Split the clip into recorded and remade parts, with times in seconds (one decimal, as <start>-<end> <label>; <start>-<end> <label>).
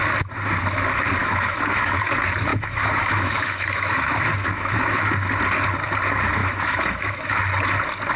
0.0-1.2 recorded; 1.2-2.1 remade; 2.1-2.5 recorded; 2.5-5.1 remade; 5.1-6.4 recorded; 6.4-7.4 remade; 7.4-8.2 recorded